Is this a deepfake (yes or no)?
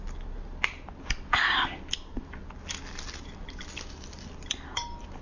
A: no